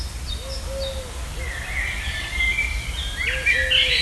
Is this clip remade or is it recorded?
recorded